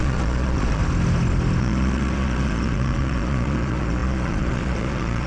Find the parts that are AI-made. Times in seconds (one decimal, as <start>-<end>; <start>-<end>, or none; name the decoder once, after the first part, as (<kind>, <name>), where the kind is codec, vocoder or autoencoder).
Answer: 0.0-0.8 (vocoder, Vocos); 1.6-5.3